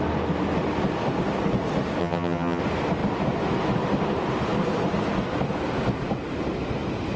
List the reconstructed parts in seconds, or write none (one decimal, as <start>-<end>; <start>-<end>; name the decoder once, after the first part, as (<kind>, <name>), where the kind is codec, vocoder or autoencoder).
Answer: 2.0-2.6 (vocoder, HiFi-GAN)